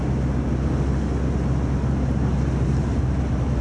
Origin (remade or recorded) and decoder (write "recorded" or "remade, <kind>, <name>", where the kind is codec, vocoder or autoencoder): recorded